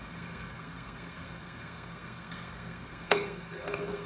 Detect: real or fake fake